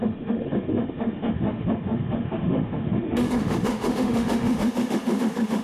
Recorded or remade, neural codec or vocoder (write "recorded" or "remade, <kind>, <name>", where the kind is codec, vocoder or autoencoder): remade, autoencoder, DAC-VAE